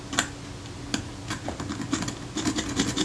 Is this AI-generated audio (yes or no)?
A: no